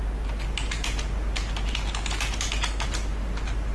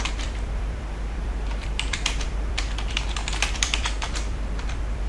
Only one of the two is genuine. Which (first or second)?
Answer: first